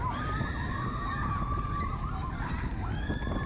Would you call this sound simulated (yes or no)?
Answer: no